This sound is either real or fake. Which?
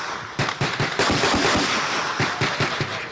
real